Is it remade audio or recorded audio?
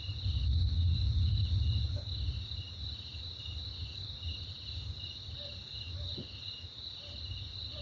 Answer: recorded